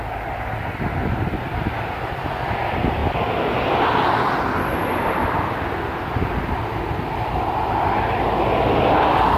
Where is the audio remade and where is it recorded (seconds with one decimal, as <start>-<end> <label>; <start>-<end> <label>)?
0.0-9.4 recorded